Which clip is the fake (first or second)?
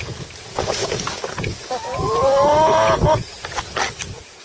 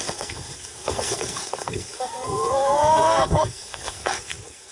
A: second